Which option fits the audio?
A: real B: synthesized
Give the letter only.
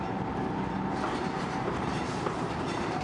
B